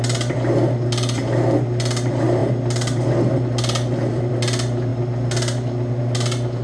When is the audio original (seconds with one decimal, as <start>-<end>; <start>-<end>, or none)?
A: 0.0-6.6